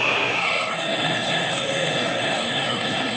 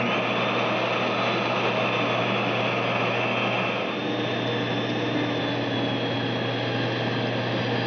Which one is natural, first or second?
second